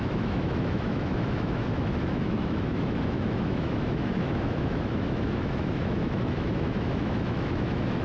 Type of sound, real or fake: fake